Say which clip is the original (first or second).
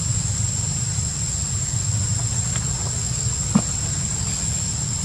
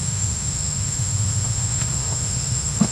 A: first